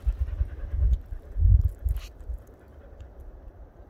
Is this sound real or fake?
fake